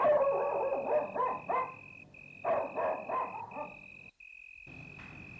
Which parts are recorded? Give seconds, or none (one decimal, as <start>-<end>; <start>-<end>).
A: 0.0-5.4